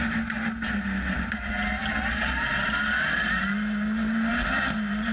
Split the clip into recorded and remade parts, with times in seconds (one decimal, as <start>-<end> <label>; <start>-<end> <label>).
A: 0.0-5.1 recorded